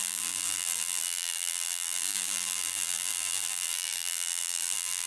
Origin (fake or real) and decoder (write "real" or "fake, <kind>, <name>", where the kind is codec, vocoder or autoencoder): fake, vocoder, BigVGAN v2